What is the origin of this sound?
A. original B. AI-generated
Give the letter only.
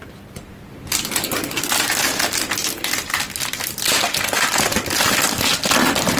A